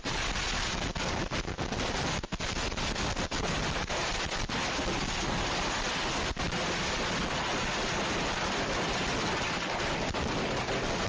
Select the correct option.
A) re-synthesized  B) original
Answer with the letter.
B